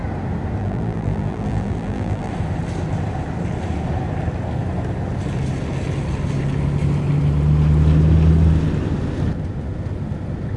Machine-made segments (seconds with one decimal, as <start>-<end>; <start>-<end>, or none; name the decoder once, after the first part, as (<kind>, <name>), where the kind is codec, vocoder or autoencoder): 0.6-2.3 (vocoder, BigVGAN v2)

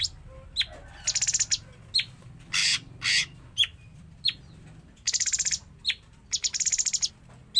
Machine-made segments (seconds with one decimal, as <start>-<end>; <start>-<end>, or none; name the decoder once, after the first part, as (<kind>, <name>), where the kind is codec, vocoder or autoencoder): 2.6-7.1 (vocoder, BigVGAN v2)